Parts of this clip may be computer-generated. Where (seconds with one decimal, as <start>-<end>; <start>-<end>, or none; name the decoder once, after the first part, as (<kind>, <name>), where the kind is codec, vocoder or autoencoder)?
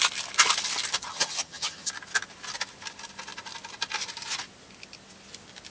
1.1-1.9 (vocoder, HiFi-GAN)